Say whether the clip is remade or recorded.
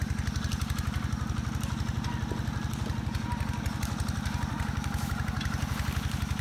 recorded